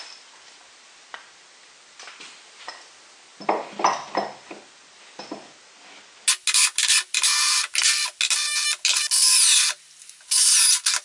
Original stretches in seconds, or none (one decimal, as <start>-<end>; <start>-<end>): 0.0-11.0